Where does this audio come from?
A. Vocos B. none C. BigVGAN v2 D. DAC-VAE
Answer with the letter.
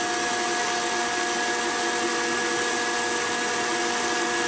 B